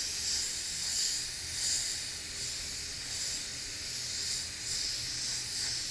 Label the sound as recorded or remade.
recorded